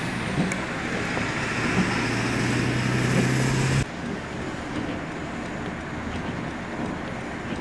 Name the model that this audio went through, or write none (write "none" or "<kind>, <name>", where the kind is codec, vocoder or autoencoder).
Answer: none